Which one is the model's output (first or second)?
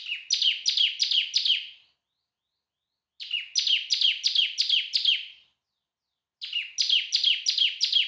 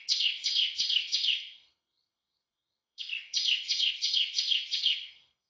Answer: second